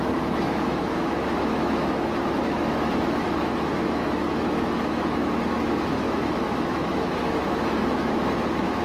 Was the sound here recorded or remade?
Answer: remade